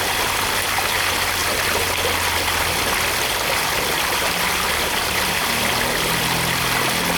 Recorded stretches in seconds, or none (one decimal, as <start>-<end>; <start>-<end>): 0.0-7.2